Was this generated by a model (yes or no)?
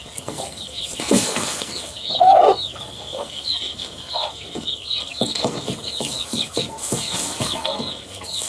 yes